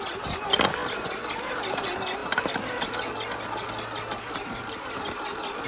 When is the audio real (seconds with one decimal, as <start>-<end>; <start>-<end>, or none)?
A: 0.0-5.7